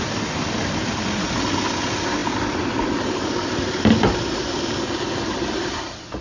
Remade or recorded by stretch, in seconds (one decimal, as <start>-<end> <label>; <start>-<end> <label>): 0.0-6.2 recorded